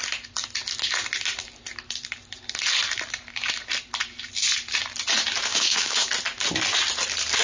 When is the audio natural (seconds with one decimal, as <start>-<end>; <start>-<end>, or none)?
0.0-5.5; 6.1-7.4